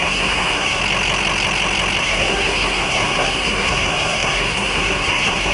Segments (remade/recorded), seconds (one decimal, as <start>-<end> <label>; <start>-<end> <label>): 0.0-0.8 remade; 0.8-2.0 recorded; 2.0-5.5 remade